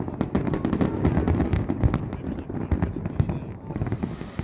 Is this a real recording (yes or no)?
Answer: yes